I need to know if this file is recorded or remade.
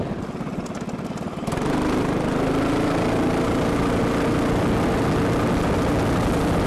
recorded